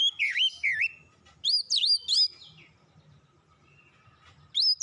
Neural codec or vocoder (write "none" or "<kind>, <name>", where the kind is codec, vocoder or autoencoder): none